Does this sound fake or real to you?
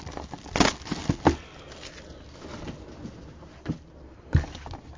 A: real